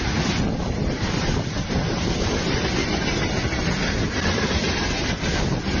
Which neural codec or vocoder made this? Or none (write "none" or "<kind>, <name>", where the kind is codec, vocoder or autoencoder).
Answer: none